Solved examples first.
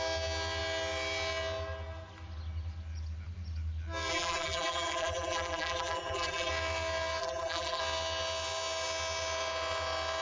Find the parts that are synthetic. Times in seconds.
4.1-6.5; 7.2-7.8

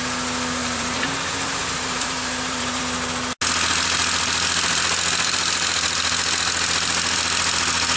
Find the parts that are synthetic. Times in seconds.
0.6-2.8

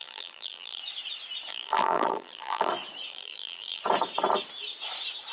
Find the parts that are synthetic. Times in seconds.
0.0-0.8; 1.5-2.7; 3.1-3.8

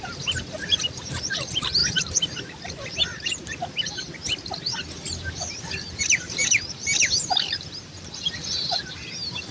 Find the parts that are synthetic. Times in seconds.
0.0-1.8; 6.0-9.5